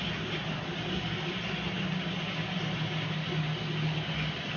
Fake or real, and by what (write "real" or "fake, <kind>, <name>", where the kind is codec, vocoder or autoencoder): real